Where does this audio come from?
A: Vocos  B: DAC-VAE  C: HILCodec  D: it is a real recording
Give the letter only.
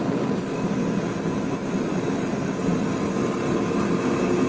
D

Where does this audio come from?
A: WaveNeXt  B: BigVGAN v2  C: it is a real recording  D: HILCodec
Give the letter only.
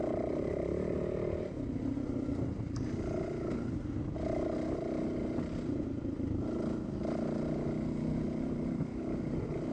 C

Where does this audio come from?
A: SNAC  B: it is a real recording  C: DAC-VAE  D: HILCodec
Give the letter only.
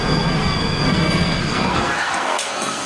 A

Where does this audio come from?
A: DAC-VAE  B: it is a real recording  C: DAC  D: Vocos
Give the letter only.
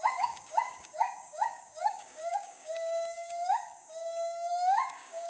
C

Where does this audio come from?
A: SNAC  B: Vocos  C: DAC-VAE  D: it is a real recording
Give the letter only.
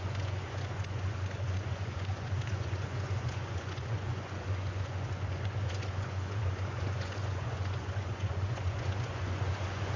B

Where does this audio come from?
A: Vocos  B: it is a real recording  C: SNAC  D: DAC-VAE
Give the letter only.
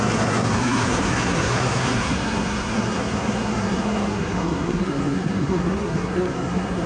C